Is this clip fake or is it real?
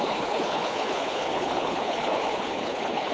fake